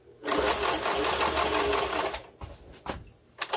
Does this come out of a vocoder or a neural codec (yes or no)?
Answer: no